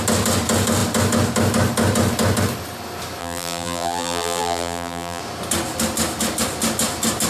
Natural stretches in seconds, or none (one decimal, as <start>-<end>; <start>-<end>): 0.0-3.2; 5.2-7.3